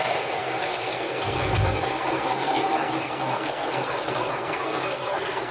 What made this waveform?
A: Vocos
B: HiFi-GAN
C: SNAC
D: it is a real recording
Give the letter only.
C